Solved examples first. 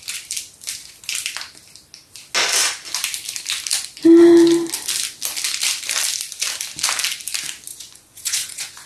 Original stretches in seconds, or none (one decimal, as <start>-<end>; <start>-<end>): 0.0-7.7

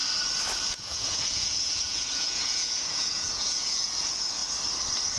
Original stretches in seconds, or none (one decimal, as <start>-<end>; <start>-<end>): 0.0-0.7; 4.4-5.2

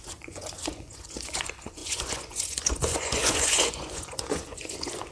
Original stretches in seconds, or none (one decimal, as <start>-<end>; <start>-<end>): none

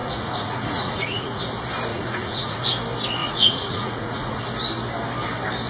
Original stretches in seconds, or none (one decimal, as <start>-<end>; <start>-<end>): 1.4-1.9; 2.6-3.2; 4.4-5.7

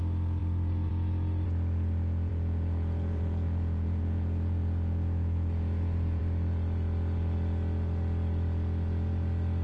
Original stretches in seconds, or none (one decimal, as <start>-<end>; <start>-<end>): 0.0-0.4; 0.9-2.3; 6.2-9.6

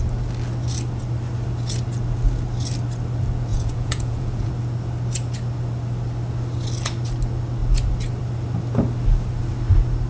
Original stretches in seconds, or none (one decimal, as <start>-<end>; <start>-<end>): 0.0-3.5; 4.5-10.1